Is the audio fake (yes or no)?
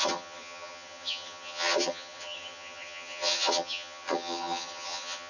yes